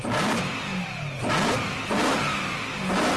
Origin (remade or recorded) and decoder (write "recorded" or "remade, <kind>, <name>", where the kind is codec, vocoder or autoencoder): recorded